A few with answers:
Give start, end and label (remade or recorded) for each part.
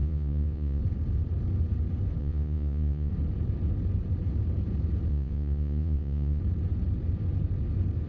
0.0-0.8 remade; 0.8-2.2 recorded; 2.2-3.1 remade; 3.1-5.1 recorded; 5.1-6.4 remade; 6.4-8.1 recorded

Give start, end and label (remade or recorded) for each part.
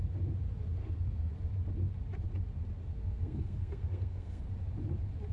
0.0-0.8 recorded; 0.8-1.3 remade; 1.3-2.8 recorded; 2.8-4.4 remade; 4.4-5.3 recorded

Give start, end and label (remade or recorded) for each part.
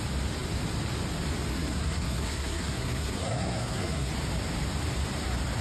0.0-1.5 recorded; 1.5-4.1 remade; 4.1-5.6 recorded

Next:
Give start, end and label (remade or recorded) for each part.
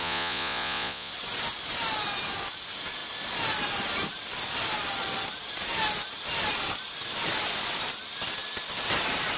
0.0-1.1 remade; 1.1-9.4 recorded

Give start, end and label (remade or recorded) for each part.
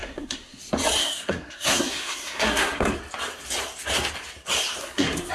0.0-0.6 remade; 0.6-1.0 recorded; 1.0-3.0 remade; 3.0-4.8 recorded; 4.8-5.3 remade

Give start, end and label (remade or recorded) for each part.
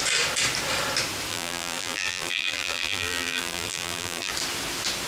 0.0-1.3 recorded; 1.3-4.3 remade; 4.3-5.1 recorded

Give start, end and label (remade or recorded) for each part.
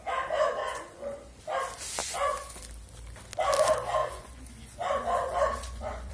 0.0-0.6 recorded; 0.6-1.4 remade; 1.4-2.0 recorded; 2.0-2.6 remade; 2.6-4.0 recorded; 4.0-6.1 remade